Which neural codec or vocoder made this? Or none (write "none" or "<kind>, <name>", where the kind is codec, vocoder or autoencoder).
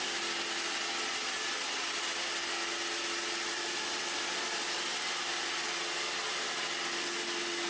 none